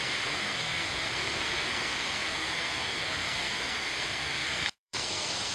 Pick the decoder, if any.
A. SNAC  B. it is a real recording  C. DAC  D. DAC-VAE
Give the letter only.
A